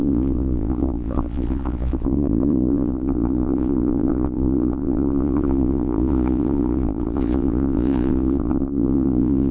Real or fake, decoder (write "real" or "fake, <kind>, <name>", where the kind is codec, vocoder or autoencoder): fake, vocoder, Vocos